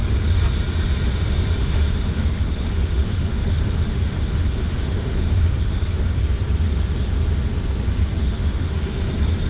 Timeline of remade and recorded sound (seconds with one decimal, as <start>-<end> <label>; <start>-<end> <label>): 0.0-1.6 recorded; 1.6-6.2 remade; 6.2-8.2 recorded; 8.2-9.1 remade; 9.1-9.5 recorded